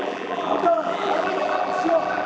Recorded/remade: remade